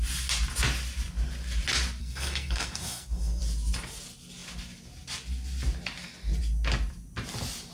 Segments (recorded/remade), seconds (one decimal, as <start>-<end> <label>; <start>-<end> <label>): 0.0-2.0 recorded; 2.0-3.4 remade; 3.4-7.7 recorded